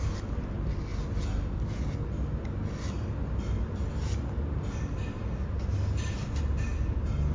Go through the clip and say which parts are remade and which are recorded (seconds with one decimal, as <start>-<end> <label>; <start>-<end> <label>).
0.0-7.3 recorded